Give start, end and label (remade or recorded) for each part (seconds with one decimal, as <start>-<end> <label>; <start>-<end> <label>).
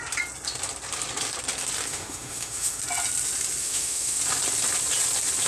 0.0-1.9 recorded; 1.9-2.8 remade; 2.8-3.6 recorded; 3.6-4.2 remade; 4.2-5.5 recorded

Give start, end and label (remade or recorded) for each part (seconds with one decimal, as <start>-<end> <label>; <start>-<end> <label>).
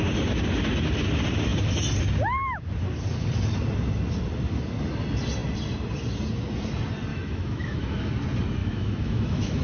0.0-7.1 recorded; 7.1-8.1 remade; 8.1-8.6 recorded; 8.6-9.6 remade